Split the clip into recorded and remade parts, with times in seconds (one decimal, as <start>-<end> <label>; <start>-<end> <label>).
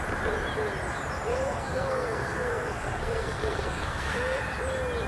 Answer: 0.0-1.3 recorded; 1.3-4.4 remade; 4.4-5.1 recorded